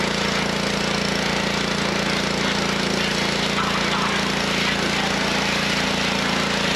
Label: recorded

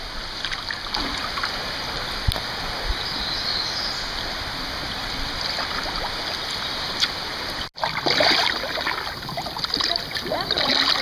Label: recorded